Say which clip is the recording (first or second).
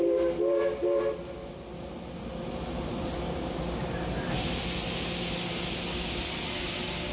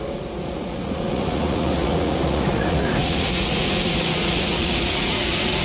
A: first